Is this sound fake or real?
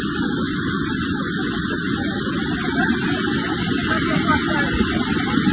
real